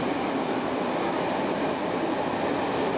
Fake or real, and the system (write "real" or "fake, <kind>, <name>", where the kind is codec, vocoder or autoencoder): real